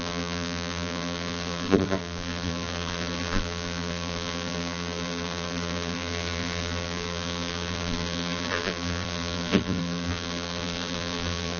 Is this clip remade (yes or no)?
yes